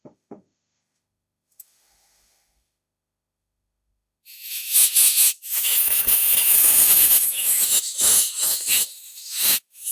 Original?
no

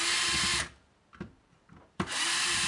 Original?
no